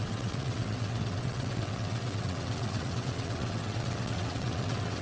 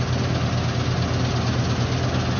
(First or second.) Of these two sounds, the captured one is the second